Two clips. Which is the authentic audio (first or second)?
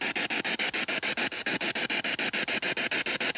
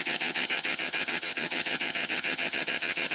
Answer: first